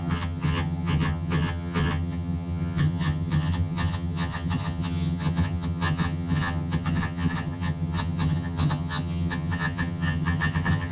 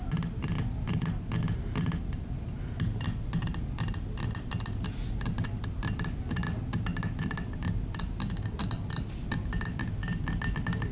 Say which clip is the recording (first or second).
second